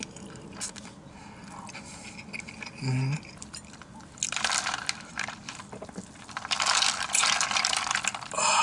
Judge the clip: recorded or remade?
recorded